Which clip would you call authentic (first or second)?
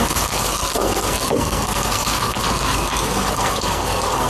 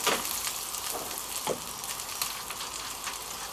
second